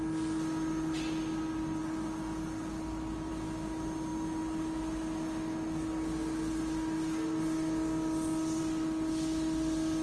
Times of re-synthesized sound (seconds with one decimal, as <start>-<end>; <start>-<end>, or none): none